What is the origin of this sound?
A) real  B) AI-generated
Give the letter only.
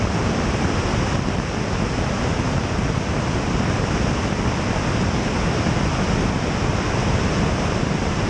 A